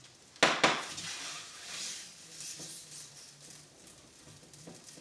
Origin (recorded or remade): recorded